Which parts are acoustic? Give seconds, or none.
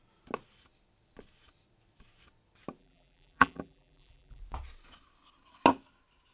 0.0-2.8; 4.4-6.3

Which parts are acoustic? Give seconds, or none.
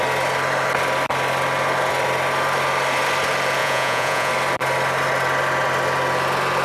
0.0-3.6; 4.3-6.6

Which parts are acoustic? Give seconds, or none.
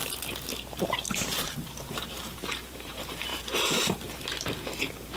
0.0-1.4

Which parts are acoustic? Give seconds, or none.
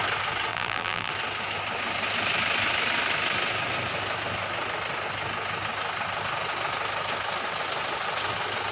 0.0-0.5; 1.1-8.7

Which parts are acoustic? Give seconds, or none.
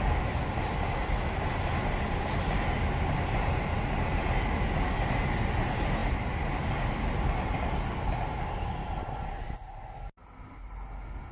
0.0-11.3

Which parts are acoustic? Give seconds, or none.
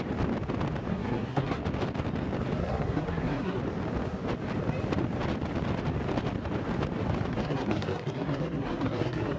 0.0-0.9; 1.6-2.6; 3.6-7.3